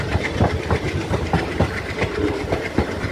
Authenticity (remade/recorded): remade